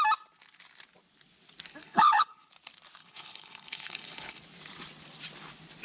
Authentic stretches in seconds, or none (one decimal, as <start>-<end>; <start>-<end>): 0.0-1.8; 2.5-3.0; 4.4-5.8